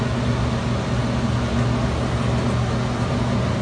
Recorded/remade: recorded